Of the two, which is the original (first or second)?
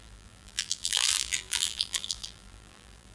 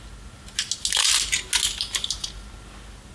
second